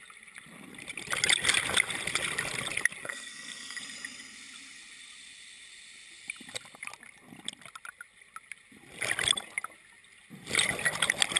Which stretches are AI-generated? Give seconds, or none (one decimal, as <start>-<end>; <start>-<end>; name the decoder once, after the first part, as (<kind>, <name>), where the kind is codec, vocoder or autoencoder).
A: 3.0-3.8 (codec, SNAC)